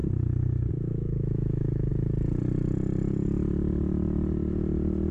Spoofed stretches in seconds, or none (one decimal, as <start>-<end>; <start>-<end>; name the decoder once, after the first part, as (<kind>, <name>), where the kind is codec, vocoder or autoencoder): 0.7-1.9 (autoencoder, DAC-VAE)